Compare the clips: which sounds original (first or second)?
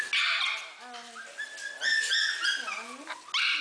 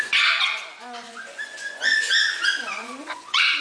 first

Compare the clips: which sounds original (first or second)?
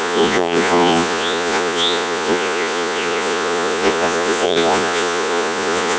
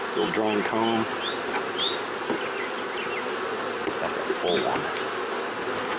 second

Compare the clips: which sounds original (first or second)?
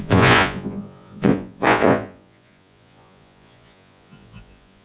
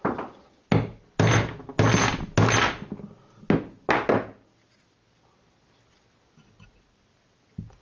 second